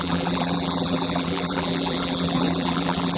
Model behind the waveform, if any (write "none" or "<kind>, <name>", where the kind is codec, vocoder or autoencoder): vocoder, BigVGAN v2